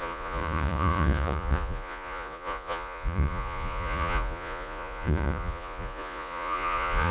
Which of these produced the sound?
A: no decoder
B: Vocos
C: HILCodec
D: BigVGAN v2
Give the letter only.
B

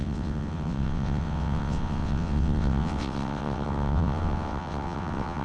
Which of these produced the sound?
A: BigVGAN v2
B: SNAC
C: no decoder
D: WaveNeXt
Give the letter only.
D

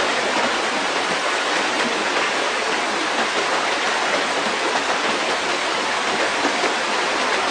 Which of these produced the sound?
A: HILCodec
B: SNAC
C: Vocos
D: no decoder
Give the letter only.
D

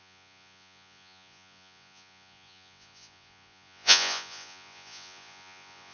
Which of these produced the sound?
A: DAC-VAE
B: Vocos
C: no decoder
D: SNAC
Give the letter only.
B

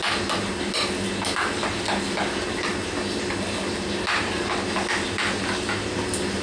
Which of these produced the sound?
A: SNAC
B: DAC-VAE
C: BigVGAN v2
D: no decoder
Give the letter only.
D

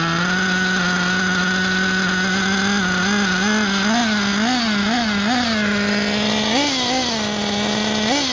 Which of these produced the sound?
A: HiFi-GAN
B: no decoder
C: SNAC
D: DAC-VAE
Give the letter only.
B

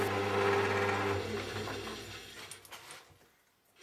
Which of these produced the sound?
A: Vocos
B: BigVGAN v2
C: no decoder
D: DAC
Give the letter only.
C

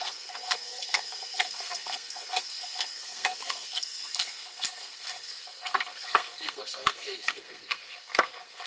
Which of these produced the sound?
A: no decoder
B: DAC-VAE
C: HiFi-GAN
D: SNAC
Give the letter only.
D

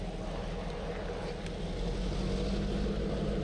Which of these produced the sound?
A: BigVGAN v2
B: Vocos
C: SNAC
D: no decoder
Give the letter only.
D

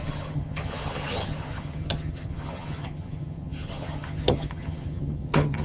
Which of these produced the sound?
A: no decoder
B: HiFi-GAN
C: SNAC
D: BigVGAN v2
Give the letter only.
B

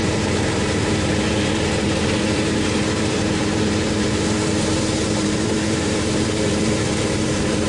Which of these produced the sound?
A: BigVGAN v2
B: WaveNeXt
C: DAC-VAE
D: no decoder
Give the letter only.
A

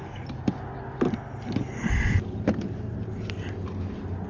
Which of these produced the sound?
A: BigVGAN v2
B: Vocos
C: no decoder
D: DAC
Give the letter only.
C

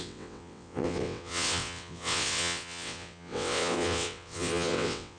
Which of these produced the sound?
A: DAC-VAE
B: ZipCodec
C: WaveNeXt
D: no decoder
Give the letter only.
C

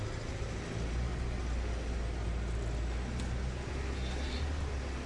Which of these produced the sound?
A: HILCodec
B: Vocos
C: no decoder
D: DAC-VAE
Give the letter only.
C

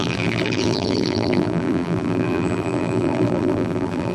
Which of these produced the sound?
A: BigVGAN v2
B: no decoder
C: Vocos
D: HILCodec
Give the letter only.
A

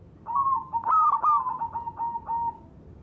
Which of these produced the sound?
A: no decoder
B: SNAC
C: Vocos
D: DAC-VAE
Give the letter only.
A